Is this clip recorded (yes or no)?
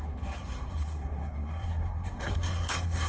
no